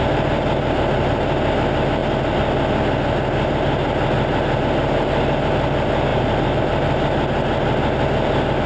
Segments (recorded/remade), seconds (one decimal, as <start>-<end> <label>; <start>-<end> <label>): 0.0-6.1 recorded; 6.1-6.6 remade; 6.6-8.7 recorded